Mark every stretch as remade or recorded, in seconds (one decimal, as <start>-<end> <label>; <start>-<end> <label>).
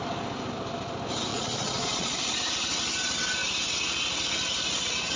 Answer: 0.0-1.3 recorded; 1.3-2.2 remade; 2.2-5.2 recorded